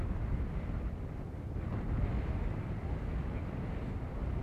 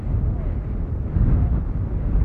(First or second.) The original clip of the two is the second